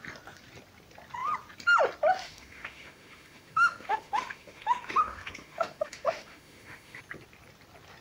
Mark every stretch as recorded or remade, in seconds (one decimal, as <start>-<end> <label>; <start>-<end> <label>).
0.0-2.2 recorded; 2.2-7.0 remade; 7.0-8.0 recorded